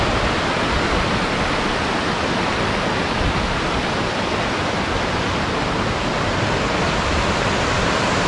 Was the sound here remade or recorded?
recorded